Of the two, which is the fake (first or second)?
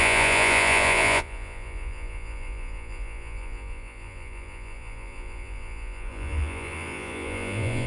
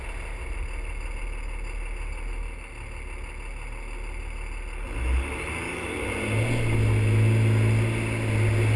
first